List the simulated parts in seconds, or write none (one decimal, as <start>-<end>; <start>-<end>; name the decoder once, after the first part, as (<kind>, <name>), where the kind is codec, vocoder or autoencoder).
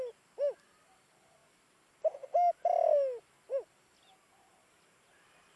none